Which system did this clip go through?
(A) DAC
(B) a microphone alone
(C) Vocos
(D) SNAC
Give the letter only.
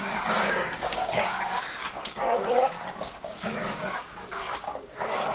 A